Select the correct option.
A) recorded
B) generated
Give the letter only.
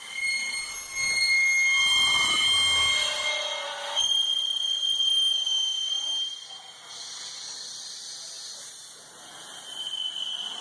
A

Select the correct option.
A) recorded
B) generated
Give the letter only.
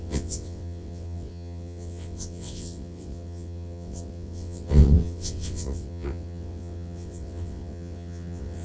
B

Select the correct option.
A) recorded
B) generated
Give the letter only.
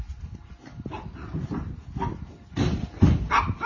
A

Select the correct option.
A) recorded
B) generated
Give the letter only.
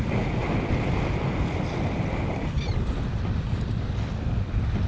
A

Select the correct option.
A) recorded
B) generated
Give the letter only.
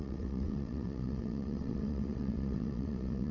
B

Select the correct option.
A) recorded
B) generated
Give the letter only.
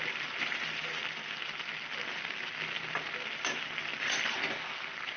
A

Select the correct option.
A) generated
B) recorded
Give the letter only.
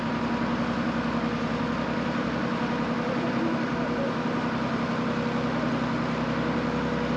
B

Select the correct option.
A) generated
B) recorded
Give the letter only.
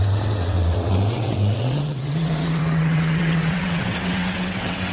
A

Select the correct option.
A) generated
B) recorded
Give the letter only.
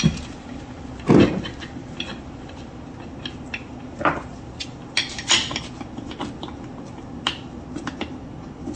B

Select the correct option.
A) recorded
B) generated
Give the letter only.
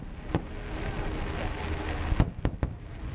A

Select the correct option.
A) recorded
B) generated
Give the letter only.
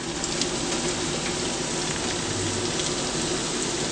A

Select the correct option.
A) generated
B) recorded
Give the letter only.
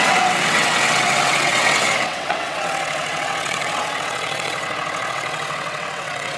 A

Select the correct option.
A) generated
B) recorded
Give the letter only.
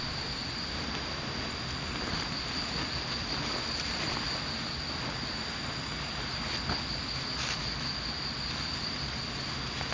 B